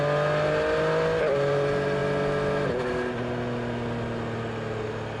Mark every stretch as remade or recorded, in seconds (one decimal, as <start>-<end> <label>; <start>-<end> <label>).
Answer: 0.0-5.2 recorded